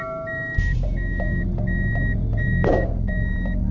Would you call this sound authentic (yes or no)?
yes